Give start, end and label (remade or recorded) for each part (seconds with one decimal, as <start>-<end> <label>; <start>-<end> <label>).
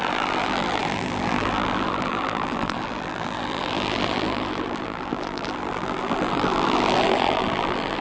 0.0-8.0 remade